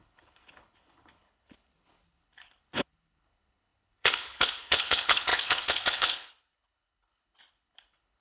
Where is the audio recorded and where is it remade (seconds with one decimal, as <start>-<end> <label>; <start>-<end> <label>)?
0.0-8.2 remade